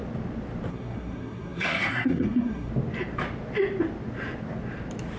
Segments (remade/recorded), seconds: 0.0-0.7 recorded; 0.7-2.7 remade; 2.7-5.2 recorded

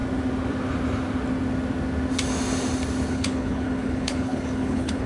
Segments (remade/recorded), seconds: 0.0-3.1 recorded; 3.1-5.1 remade

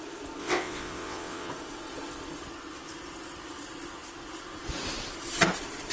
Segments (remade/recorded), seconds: 0.0-0.4 recorded; 0.4-1.5 remade; 1.5-5.9 recorded

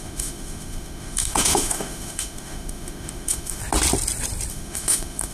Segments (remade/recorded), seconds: 0.0-3.6 remade; 3.6-4.5 recorded; 4.5-5.3 remade

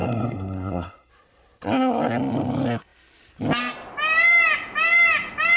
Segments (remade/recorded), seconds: 0.0-1.1 remade; 1.1-5.6 recorded

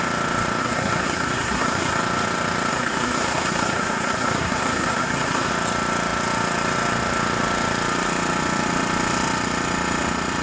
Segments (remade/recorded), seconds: 0.0-0.6 recorded; 0.6-2.0 remade; 2.0-2.7 recorded; 2.7-5.5 remade; 5.5-10.4 recorded